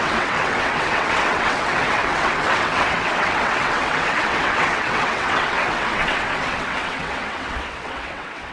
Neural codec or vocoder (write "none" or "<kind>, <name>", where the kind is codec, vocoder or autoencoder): vocoder, WaveNeXt